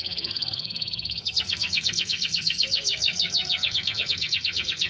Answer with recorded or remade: remade